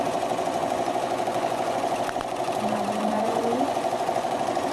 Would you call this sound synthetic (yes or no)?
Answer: yes